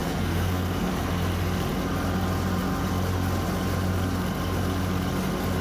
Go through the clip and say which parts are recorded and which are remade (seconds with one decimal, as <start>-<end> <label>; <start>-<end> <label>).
0.0-0.9 remade; 0.9-5.6 recorded